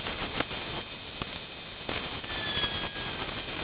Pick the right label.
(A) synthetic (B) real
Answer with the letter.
B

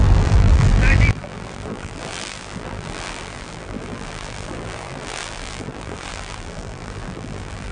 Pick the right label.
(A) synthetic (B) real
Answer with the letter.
A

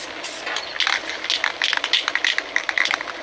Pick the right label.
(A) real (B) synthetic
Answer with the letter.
A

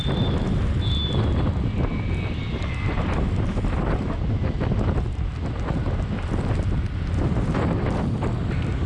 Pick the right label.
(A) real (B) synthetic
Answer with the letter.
A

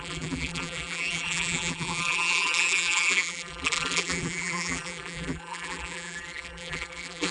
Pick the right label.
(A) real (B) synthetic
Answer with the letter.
B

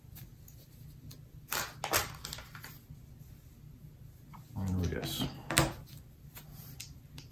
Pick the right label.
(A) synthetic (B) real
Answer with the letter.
B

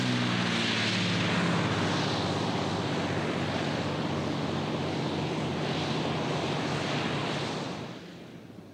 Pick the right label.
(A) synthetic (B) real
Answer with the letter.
B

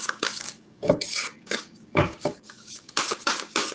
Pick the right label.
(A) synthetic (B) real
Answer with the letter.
A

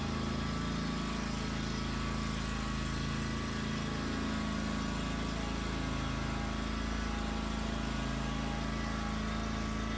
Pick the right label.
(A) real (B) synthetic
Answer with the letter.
A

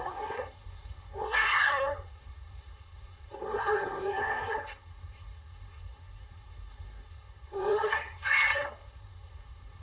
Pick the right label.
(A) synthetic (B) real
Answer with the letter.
A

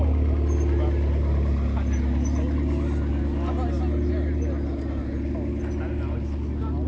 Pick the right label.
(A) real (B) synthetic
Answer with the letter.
A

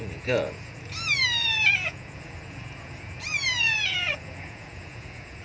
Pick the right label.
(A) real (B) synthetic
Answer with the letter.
B